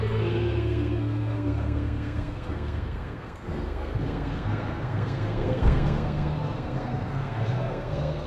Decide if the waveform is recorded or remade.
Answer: remade